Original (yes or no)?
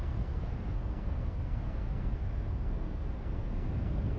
no